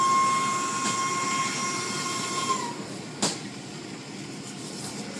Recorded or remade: recorded